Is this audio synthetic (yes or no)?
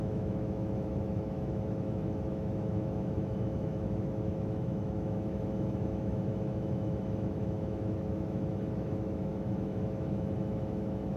yes